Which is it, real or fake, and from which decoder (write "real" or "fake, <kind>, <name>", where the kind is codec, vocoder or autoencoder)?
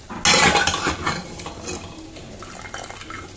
real